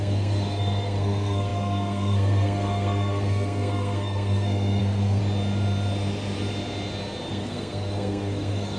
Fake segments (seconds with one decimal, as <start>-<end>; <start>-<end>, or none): 0.0-5.2; 7.3-8.8